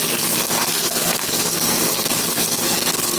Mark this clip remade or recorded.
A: remade